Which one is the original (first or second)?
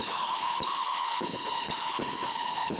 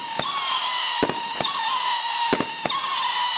second